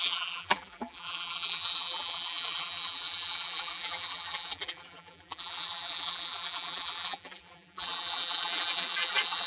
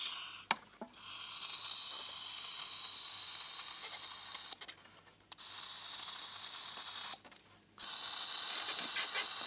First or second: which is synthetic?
first